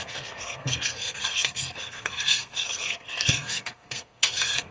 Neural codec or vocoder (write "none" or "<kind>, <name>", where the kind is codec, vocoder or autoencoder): codec, SNAC